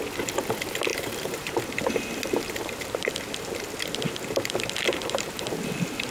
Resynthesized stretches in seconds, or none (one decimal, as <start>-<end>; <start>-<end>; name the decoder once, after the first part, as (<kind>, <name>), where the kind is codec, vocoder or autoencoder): 0.9-3.1 (vocoder, BigVGAN v2); 4.9-5.5